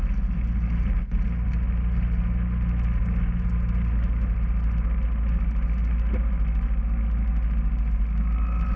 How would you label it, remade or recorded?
recorded